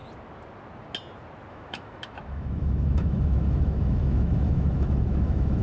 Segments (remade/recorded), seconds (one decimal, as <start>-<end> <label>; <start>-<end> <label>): 0.0-1.5 recorded; 1.5-5.6 remade